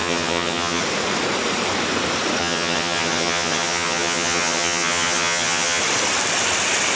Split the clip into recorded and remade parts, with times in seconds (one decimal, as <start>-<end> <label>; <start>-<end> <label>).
0.0-0.8 remade; 0.8-2.4 recorded; 2.4-5.8 remade; 5.8-7.0 recorded